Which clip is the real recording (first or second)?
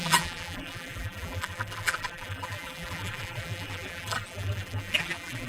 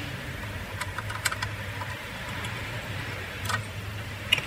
second